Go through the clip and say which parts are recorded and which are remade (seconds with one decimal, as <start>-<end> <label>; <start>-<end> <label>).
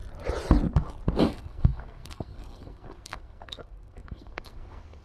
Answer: 0.0-1.2 recorded; 1.2-5.0 remade